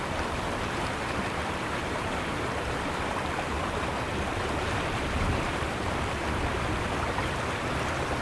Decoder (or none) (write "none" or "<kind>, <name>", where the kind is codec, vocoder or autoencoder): vocoder, BigVGAN v2